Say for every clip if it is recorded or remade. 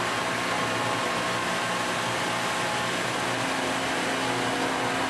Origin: recorded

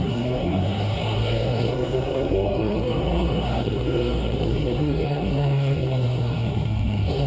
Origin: remade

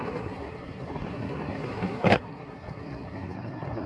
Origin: remade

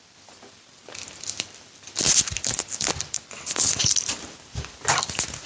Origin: recorded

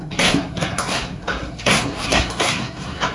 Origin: remade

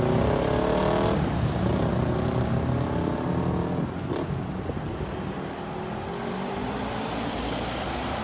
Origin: recorded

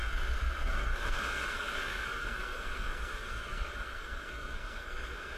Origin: remade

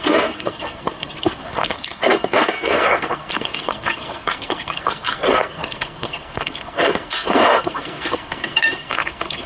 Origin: remade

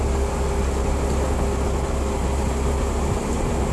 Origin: recorded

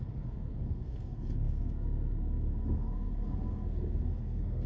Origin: remade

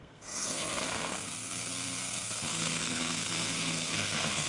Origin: remade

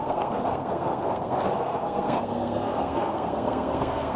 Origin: remade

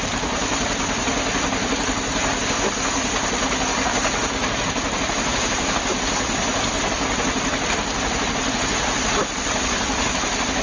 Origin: recorded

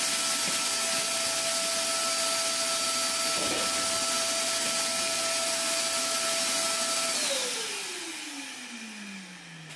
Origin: recorded